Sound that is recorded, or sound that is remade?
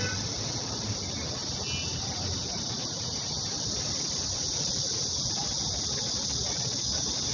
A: recorded